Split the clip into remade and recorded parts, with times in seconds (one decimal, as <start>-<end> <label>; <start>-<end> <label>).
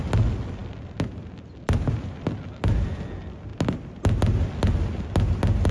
0.0-5.7 recorded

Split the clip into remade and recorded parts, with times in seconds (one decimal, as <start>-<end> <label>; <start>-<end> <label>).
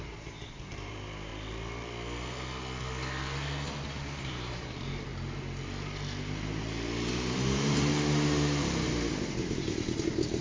0.0-1.3 remade; 1.3-4.3 recorded; 4.3-5.1 remade; 5.1-7.1 recorded; 7.1-7.9 remade; 7.9-9.3 recorded; 9.3-10.4 remade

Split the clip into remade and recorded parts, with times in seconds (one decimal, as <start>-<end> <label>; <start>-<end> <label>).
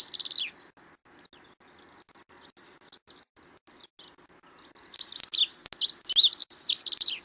0.0-6.4 recorded; 6.4-7.2 remade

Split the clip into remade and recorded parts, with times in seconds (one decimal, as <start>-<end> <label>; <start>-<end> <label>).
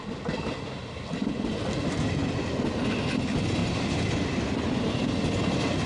0.0-3.6 recorded; 3.6-4.6 remade; 4.6-5.9 recorded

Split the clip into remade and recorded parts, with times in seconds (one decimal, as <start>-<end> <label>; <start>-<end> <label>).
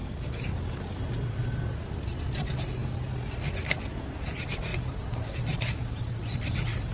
0.0-4.7 recorded; 4.7-6.0 remade; 6.0-6.9 recorded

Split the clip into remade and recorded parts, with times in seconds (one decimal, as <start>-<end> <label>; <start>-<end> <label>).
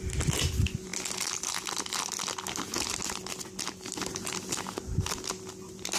0.0-6.0 recorded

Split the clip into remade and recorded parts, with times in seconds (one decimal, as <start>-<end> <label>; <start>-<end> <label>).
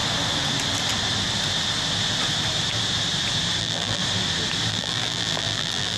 0.0-3.6 recorded; 3.6-4.0 remade; 4.0-4.7 recorded; 4.7-6.0 remade